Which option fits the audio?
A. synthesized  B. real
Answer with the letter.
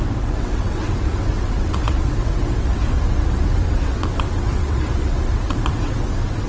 A